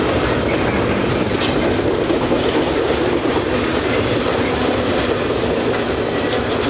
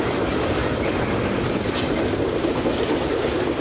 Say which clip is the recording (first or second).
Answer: first